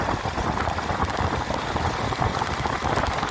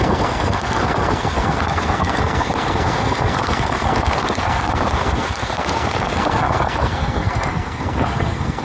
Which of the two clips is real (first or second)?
first